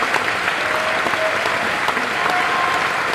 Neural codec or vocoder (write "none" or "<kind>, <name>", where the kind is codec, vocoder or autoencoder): none